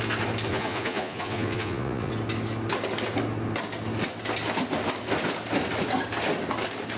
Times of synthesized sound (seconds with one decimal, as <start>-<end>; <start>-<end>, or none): 0.5-2.1